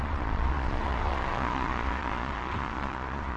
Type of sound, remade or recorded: remade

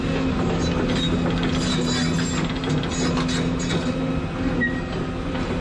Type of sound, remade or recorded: recorded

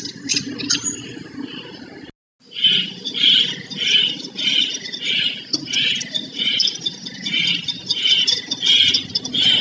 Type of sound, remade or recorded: recorded